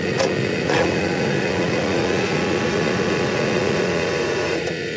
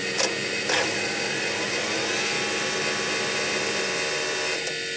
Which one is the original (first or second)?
second